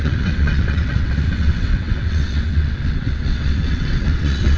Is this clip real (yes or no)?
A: no